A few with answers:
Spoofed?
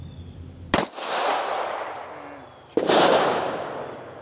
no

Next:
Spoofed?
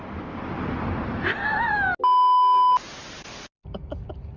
no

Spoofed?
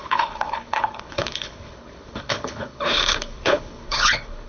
yes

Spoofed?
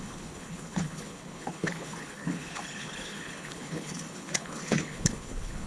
yes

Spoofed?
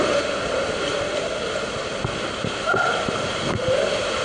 no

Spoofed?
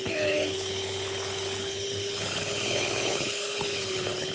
yes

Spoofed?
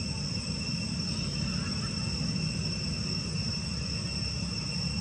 no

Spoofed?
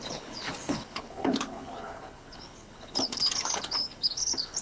yes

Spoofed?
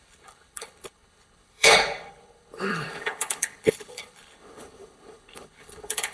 yes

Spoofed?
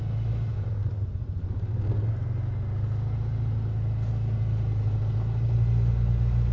no